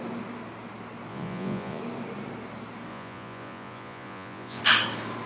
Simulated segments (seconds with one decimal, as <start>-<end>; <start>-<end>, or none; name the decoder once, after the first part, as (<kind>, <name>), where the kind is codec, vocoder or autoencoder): 1.1-1.8 (vocoder, Vocos); 2.9-4.6